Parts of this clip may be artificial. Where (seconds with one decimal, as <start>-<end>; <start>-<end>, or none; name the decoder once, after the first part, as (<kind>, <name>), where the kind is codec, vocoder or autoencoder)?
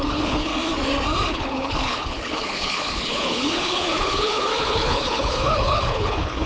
0.0-0.5 (codec, HILCodec); 1.3-6.5